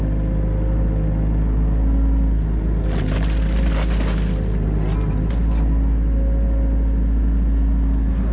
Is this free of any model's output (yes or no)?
yes